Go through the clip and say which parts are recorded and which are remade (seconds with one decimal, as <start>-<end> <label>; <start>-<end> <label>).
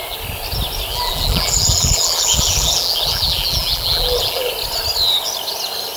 0.0-0.9 recorded; 0.9-4.5 remade; 4.5-6.0 recorded